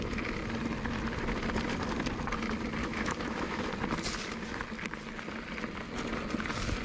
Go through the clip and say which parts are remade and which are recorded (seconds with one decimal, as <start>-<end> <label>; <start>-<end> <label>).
0.0-2.8 recorded; 2.8-3.7 remade; 3.7-6.8 recorded